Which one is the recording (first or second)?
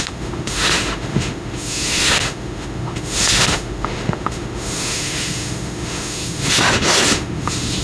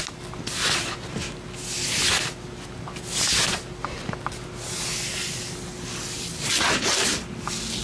second